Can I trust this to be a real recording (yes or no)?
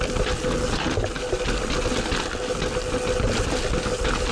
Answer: yes